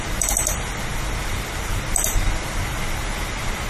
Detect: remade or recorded recorded